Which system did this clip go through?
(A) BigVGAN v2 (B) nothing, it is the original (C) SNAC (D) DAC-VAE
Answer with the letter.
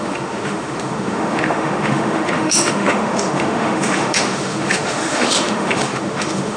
D